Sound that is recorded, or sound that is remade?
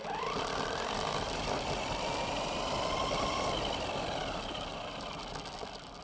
recorded